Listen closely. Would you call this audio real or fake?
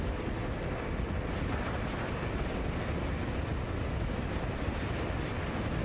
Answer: real